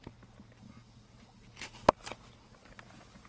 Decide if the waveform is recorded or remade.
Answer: recorded